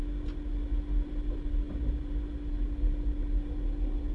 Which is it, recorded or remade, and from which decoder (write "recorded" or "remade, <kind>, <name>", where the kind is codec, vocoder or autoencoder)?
recorded